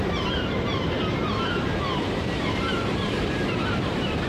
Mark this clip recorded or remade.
remade